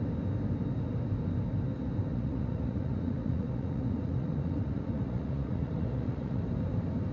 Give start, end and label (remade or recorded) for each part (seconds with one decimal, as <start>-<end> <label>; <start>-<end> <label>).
0.0-2.1 recorded; 2.1-6.4 remade; 6.4-7.1 recorded